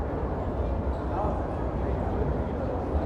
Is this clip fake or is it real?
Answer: real